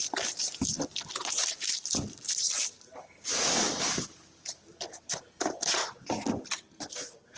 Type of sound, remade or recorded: remade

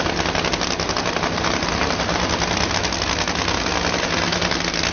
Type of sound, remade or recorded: recorded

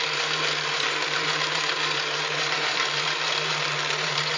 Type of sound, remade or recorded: remade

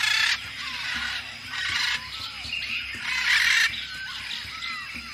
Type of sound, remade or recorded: recorded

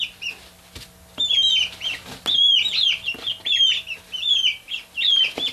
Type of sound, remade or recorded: recorded